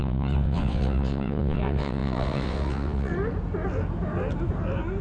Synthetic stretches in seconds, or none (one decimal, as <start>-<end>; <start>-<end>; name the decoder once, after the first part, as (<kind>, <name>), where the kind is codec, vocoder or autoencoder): 0.0-3.1 (vocoder, WaveNeXt)

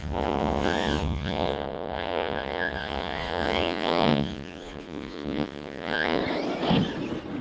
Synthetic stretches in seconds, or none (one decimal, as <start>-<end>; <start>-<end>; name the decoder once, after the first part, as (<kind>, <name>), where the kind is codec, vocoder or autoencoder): 0.0-6.2 (vocoder, Vocos)

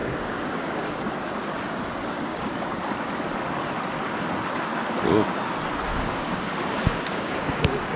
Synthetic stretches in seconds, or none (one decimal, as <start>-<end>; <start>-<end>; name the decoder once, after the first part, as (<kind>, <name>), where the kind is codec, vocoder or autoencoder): 0.0-1.1 (codec, DAC); 2.3-2.8; 5.9-8.0